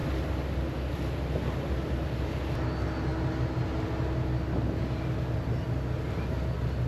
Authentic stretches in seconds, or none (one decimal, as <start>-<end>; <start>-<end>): 0.0-6.9